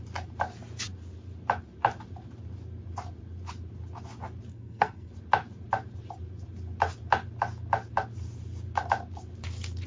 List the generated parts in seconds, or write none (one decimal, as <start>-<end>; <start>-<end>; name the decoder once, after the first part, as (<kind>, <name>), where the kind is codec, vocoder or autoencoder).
4.5-5.1 (codec, SNAC)